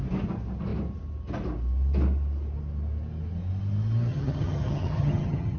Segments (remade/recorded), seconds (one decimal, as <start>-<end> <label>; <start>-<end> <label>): 0.0-4.1 recorded; 4.1-5.6 remade